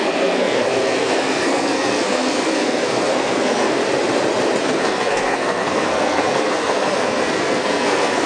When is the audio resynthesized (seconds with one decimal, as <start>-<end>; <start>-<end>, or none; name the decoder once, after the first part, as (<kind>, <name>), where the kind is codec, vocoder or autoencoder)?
0.0-3.8 (codec, SNAC); 4.6-8.3